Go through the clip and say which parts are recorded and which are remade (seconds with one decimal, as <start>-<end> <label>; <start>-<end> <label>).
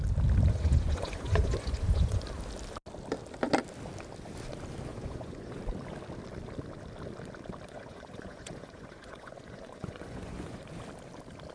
0.0-0.5 recorded; 0.5-2.2 remade; 2.2-4.9 recorded; 4.9-5.6 remade; 5.6-7.7 recorded; 7.7-10.6 remade; 10.6-11.5 recorded